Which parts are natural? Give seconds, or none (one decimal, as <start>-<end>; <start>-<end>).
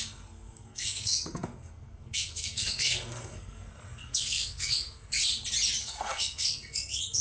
5.2-5.8